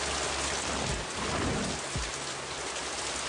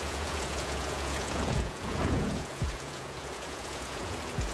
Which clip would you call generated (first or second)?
second